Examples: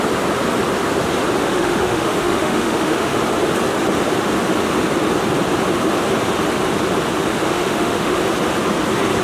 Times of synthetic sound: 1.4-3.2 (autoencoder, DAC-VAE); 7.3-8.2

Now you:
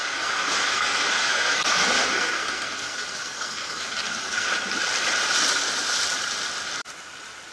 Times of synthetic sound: 0.0-4.5 (codec, SNAC)

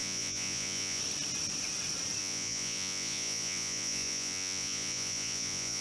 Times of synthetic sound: 0.0-1.0 (vocoder, Vocos); 2.2-5.8

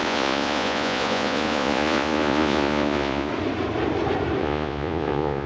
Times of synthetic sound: 0.0-3.3 (vocoder, Vocos); 4.4-5.5